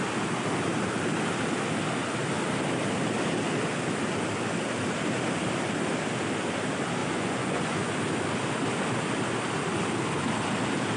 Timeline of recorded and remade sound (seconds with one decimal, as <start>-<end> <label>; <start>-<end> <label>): 0.0-7.0 recorded; 7.0-7.9 remade; 7.9-11.0 recorded